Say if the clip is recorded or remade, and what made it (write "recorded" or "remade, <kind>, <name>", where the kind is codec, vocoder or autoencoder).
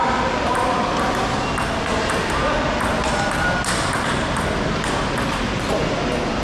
recorded